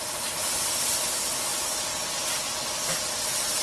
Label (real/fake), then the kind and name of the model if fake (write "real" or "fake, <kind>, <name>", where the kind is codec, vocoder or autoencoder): real